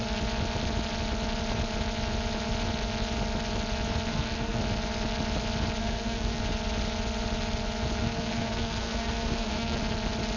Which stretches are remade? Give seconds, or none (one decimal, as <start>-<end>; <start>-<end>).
4.1-4.6; 5.8-6.4; 8.0-9.8